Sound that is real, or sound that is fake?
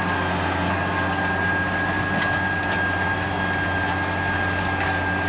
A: real